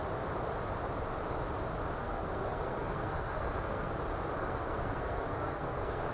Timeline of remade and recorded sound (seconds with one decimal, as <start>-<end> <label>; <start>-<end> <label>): 0.0-2.0 recorded; 2.0-3.9 remade; 3.9-4.4 recorded; 4.4-6.1 remade